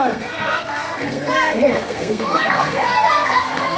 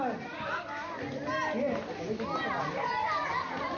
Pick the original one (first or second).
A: second